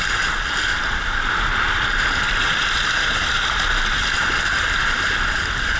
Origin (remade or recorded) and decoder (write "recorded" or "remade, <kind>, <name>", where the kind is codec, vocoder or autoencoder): recorded